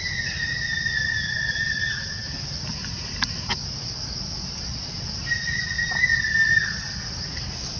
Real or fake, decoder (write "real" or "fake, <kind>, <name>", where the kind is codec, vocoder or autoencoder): real